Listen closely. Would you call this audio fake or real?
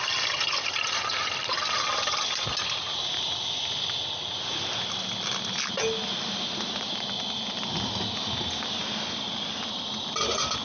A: real